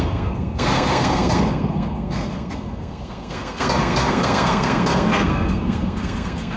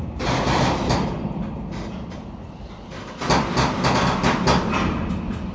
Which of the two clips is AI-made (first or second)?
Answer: first